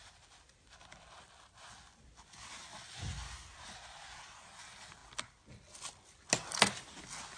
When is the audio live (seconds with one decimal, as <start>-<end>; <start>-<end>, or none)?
0.0-7.4